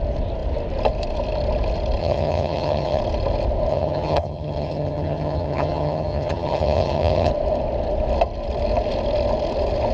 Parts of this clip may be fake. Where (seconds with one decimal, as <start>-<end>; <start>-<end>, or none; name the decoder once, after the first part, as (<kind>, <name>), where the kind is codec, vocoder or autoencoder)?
2.0-3.0 (vocoder, HiFi-GAN); 3.7-7.3